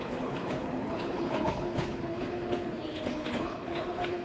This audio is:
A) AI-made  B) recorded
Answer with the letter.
A